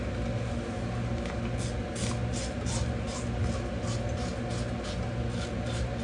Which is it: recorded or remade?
recorded